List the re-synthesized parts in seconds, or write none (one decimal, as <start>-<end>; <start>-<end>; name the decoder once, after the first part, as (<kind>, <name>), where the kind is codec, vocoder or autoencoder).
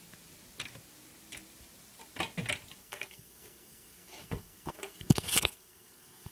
2.8-6.3 (codec, SNAC)